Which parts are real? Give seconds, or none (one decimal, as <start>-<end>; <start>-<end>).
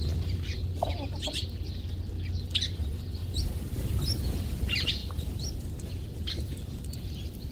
0.0-3.2; 4.0-5.0